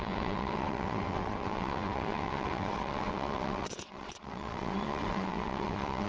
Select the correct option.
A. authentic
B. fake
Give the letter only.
B